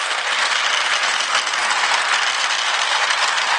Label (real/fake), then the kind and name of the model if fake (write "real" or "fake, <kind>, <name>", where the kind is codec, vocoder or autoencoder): real